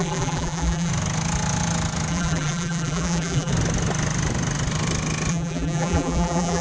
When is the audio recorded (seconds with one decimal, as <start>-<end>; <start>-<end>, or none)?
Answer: 0.9-2.1; 3.5-5.3